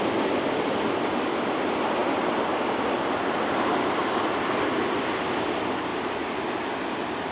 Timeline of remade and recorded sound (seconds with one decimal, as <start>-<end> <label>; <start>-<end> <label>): 0.0-7.3 recorded